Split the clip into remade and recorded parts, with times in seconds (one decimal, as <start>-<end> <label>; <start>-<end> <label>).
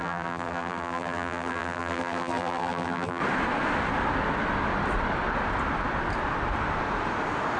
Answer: 0.0-3.2 remade; 3.2-7.6 recorded